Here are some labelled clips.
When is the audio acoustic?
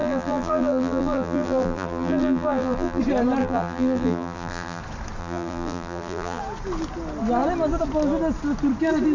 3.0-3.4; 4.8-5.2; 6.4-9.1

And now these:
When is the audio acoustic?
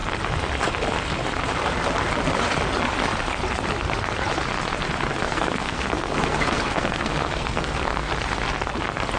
0.0-5.2; 8.1-9.2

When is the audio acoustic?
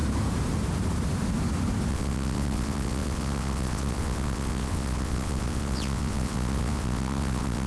0.0-1.9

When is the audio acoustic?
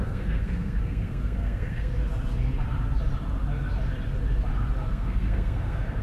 1.9-4.9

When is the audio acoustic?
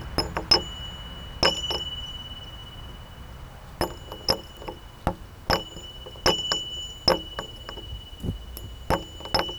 0.0-9.6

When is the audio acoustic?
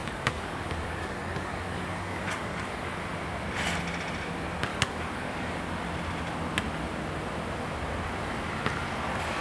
3.0-4.7; 5.6-9.4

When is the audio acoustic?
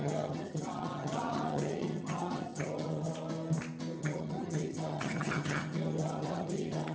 3.1-4.0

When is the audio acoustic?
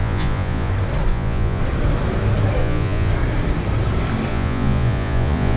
0.7-1.1; 1.6-2.6; 3.1-4.3